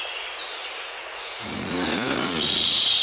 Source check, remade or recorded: remade